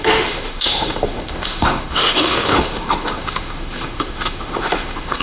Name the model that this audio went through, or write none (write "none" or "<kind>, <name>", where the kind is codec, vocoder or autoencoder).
autoencoder, DAC-VAE